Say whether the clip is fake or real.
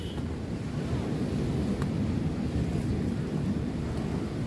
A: real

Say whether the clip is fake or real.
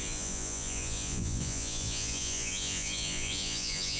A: fake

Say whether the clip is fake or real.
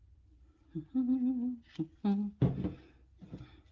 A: real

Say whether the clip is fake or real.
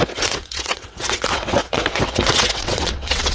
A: fake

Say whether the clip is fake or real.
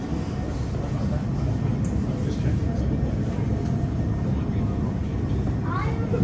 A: real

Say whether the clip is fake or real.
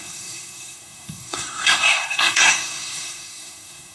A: fake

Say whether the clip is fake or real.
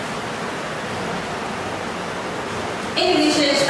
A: real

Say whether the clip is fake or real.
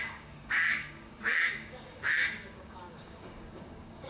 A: fake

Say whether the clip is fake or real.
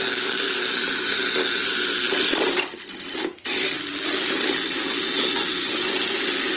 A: fake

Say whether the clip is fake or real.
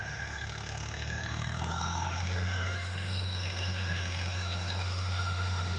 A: fake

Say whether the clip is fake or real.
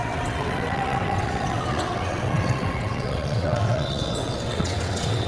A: fake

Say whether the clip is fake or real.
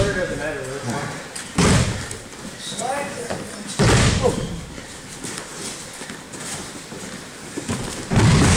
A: real